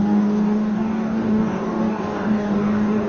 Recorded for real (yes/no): no